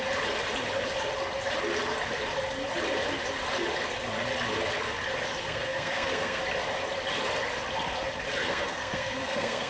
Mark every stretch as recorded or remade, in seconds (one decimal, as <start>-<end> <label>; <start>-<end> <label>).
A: 0.0-5.4 recorded; 5.4-6.4 remade; 6.4-8.4 recorded; 8.4-9.7 remade